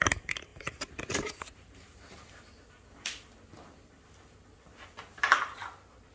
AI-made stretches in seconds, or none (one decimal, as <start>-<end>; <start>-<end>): 0.5-2.5